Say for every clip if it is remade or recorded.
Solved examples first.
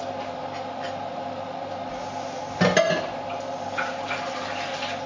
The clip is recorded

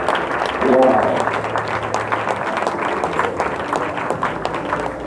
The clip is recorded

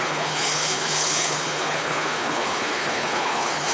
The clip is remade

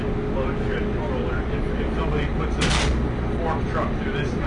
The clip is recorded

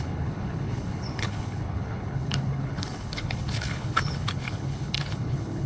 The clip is remade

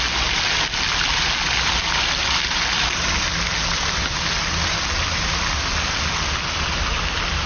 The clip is recorded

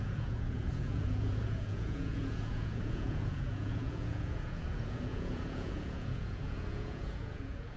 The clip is remade